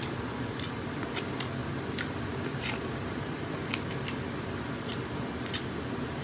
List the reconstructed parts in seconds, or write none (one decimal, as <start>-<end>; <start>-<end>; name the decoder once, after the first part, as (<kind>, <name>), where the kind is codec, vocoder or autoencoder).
1.6-3.7 (vocoder, BigVGAN v2); 4.9-5.6